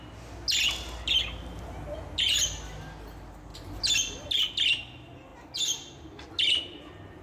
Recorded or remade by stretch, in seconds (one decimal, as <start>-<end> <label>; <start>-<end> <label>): 0.0-7.2 recorded